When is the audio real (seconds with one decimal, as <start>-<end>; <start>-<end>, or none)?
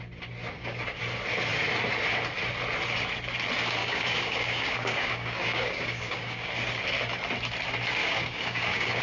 0.0-0.5; 1.0-3.8; 6.5-8.0